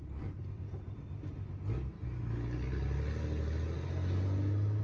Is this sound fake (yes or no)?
no